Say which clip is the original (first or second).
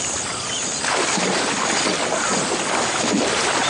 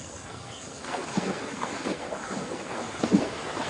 first